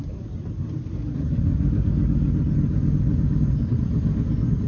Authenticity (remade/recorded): recorded